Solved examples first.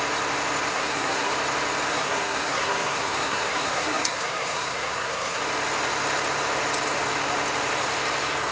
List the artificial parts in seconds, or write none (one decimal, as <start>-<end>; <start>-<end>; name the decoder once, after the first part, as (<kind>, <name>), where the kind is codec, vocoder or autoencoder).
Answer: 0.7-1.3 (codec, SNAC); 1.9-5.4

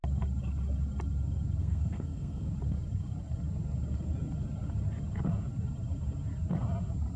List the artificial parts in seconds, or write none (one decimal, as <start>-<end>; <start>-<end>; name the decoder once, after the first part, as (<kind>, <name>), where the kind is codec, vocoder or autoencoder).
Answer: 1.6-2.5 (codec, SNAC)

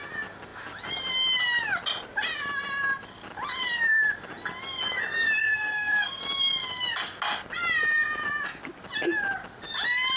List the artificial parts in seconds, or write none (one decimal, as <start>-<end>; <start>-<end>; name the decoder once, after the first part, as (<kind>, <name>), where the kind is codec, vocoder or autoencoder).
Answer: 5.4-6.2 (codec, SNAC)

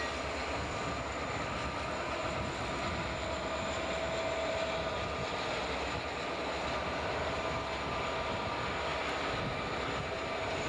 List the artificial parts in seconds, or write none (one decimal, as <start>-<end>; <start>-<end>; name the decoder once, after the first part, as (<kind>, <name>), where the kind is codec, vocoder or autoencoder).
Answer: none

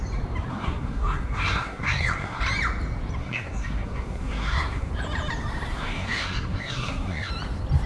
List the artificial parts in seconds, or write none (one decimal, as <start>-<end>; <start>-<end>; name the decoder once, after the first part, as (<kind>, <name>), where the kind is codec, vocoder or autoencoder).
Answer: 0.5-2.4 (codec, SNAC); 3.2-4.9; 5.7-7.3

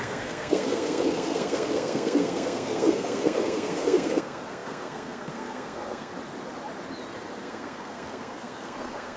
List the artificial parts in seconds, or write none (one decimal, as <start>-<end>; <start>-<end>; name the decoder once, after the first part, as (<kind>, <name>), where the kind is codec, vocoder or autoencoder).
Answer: 0.0-6.1 (codec, SNAC); 7.4-9.2

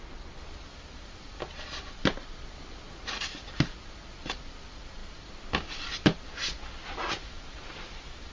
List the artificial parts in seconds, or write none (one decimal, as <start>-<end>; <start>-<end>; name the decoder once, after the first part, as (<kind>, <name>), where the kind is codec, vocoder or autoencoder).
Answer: none

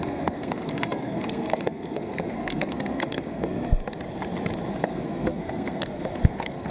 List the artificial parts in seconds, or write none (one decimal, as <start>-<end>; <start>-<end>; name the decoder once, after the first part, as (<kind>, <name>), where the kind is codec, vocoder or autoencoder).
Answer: 0.0-3.8 (codec, SNAC); 4.7-6.7